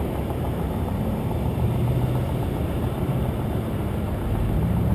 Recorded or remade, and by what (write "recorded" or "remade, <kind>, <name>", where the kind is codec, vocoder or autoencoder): remade, vocoder, BigVGAN v2